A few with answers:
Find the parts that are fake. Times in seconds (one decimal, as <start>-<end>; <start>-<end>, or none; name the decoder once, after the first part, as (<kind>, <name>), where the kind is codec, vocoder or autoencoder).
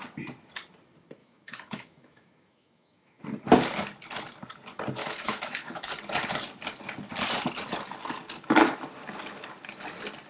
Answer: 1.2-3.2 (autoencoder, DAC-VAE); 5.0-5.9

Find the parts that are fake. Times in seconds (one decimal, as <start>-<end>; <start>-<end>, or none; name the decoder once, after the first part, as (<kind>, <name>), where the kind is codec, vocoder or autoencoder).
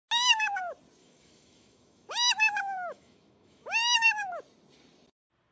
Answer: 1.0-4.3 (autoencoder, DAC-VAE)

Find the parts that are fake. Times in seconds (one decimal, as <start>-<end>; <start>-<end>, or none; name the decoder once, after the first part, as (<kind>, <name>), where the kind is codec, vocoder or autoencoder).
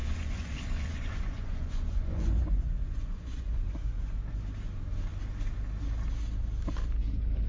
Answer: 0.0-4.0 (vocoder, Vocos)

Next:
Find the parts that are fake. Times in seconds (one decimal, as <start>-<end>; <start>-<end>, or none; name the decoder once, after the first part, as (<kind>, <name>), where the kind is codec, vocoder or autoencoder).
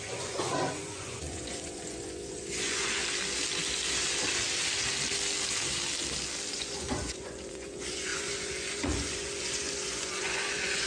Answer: 0.0-3.0 (vocoder, Vocos); 6.5-10.9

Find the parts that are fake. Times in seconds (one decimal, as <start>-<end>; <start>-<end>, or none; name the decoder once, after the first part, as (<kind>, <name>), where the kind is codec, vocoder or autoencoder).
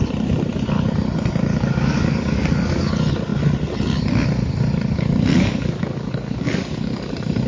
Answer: 1.5-2.9 (codec, DAC); 5.3-7.1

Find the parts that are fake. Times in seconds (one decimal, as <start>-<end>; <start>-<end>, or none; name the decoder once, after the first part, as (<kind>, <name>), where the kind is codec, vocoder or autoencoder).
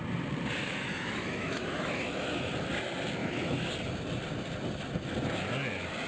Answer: 0.6-2.5 (autoencoder, DAC-VAE); 3.2-3.7